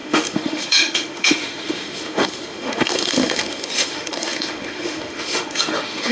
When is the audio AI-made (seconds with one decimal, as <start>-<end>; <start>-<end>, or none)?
0.0-6.1